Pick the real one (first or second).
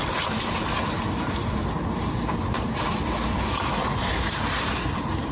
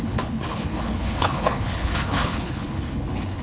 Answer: first